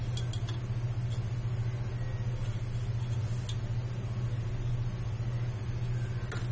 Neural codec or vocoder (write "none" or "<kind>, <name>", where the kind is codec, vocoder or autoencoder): none